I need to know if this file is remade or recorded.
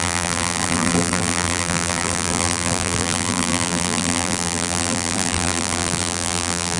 remade